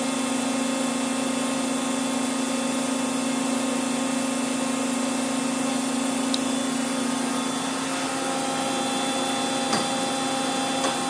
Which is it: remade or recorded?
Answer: recorded